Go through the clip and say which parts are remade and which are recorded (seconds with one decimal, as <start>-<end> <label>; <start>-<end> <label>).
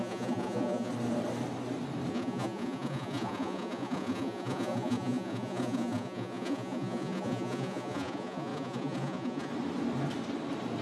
0.0-0.9 remade; 0.9-2.1 recorded; 2.1-9.5 remade; 9.5-10.8 recorded